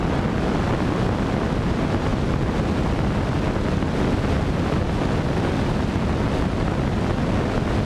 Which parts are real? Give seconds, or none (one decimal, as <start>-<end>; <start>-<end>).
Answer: 0.0-7.9